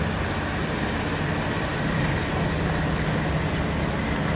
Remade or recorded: recorded